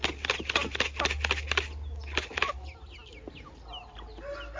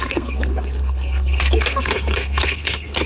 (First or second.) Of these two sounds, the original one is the first